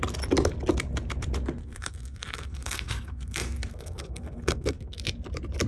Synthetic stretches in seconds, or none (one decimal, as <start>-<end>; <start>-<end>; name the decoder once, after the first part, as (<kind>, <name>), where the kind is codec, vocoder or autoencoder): 1.6-5.0 (codec, SNAC)